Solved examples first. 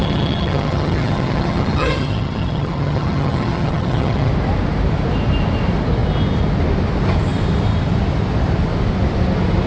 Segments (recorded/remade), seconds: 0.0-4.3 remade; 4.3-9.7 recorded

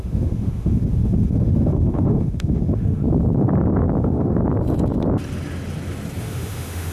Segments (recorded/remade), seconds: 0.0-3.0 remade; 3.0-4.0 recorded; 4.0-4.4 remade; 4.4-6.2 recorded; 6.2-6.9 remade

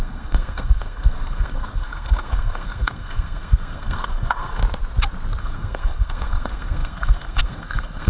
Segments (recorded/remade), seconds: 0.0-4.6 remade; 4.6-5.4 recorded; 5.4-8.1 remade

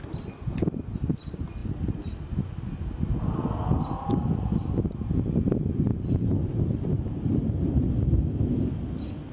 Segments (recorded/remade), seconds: 0.0-5.9 recorded; 5.9-7.9 remade; 7.9-9.3 recorded